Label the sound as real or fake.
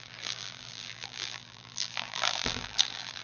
fake